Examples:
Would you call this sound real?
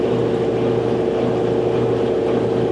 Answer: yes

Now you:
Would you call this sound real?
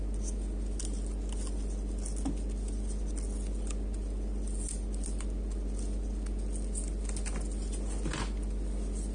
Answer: yes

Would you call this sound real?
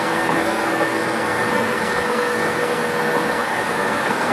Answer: no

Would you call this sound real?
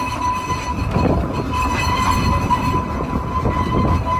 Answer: yes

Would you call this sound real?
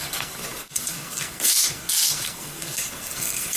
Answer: no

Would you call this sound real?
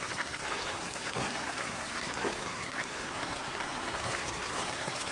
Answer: no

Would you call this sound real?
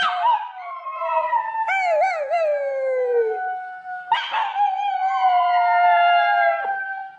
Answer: yes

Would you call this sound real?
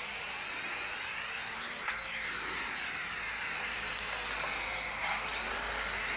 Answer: yes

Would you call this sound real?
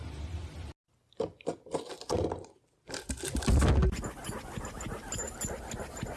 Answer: yes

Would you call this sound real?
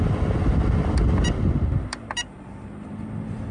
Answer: yes